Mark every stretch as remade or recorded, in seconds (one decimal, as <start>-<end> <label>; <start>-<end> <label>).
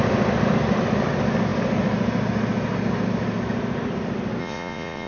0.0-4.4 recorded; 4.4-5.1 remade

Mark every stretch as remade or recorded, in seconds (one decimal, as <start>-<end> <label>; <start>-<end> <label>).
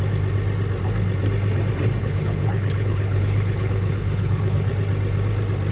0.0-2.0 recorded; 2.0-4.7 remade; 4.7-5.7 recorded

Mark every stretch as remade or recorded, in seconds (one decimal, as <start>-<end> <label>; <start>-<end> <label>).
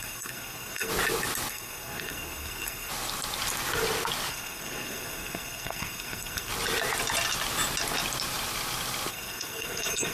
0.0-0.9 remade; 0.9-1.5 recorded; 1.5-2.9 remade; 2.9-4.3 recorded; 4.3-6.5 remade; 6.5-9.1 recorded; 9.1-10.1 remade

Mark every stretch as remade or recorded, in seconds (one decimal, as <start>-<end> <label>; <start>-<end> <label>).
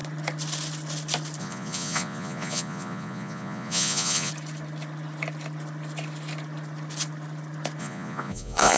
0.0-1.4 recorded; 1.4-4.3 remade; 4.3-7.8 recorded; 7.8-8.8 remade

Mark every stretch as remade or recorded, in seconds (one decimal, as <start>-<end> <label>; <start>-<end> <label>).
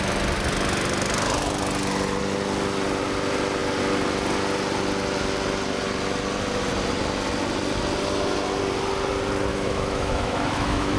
0.0-9.5 recorded; 9.5-11.0 remade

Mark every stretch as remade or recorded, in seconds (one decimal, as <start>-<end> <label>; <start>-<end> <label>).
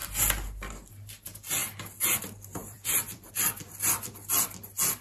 0.0-2.6 recorded; 2.6-3.3 remade; 3.3-5.0 recorded